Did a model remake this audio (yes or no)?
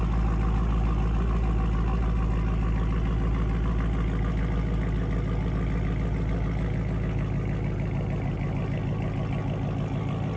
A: no